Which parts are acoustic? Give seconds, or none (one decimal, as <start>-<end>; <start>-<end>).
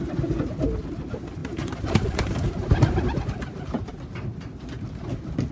0.0-1.4; 3.9-5.5